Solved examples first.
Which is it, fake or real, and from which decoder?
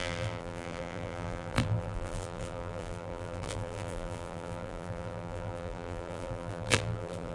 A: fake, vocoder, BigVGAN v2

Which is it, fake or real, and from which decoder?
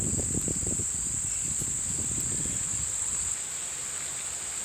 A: fake, vocoder, BigVGAN v2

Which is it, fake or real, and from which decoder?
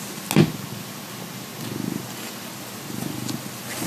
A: real